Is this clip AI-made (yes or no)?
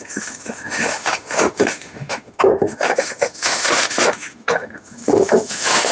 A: yes